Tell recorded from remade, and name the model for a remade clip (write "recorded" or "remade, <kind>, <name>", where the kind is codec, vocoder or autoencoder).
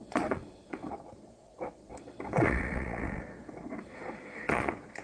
remade, vocoder, Vocos